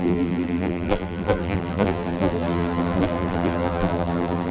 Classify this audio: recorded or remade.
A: remade